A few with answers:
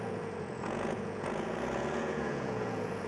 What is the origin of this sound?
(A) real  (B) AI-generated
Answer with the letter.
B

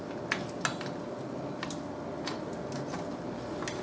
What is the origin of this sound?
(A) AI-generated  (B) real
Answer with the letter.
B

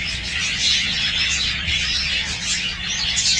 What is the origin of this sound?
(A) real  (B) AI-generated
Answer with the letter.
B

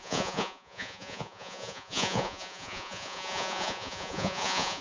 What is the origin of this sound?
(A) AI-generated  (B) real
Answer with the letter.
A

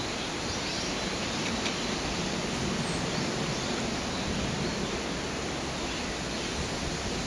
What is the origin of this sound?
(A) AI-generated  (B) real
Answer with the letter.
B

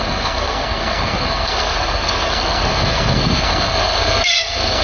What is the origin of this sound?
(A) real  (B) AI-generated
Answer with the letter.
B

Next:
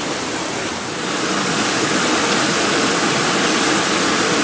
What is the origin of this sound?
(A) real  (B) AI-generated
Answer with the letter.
A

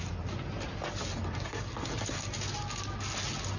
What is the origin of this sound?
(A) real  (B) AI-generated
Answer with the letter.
A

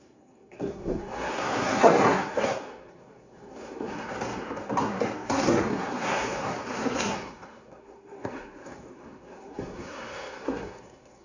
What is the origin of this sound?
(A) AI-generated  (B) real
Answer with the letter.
A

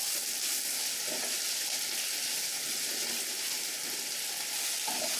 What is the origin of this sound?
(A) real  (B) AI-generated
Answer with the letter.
A